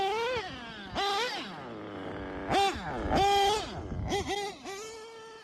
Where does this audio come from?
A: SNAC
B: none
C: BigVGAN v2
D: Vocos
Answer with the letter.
B